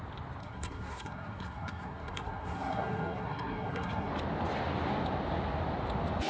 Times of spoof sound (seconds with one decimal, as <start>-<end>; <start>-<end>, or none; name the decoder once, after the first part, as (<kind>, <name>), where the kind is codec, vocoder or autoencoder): 0.4-4.1 (codec, SNAC)